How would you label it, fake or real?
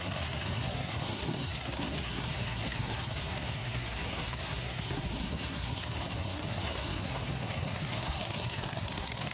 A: fake